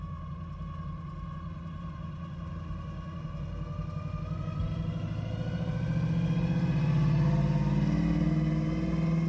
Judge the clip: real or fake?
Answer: real